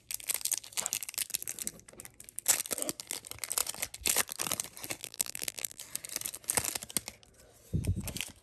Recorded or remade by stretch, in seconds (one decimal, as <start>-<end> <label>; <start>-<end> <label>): 0.0-5.0 recorded; 5.0-5.8 remade; 5.8-8.4 recorded